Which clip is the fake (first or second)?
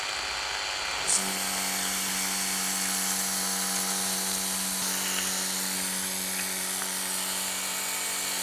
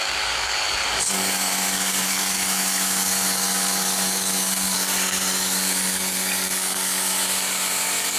second